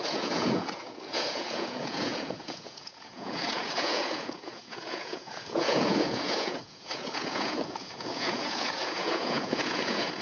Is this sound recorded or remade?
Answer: remade